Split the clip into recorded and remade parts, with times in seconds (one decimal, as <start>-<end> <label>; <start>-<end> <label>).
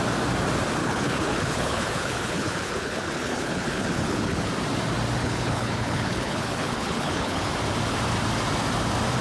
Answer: 0.0-0.8 recorded; 0.8-4.5 remade; 4.5-5.2 recorded; 5.2-7.5 remade; 7.5-9.2 recorded